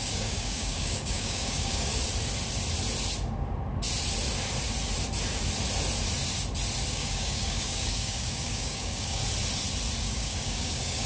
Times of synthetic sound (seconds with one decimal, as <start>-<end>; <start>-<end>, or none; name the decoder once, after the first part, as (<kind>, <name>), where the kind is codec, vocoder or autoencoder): 0.0-1.9 (codec, DAC); 6.9-9.2; 10.0-11.1

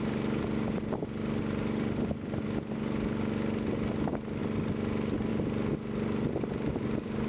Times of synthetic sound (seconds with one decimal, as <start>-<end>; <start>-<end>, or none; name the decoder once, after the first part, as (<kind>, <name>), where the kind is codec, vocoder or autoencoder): none

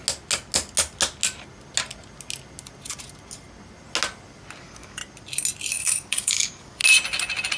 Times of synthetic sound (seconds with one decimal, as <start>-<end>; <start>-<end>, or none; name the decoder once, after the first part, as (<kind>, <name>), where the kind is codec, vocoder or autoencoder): 4.6-5.0 (codec, DAC); 5.7-6.8